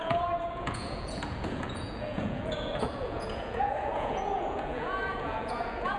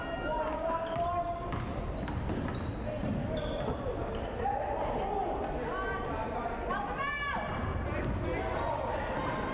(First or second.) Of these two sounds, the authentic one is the second